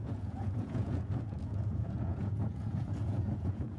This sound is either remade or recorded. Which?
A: remade